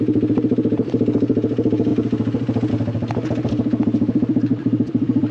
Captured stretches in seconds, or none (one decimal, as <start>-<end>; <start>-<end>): 0.0-4.5